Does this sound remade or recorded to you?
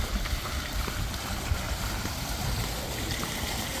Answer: remade